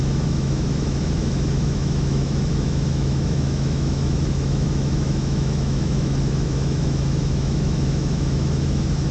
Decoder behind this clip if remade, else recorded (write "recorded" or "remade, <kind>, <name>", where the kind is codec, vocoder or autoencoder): remade, autoencoder, DAC-VAE